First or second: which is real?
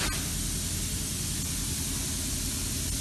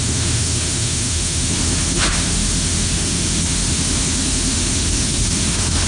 first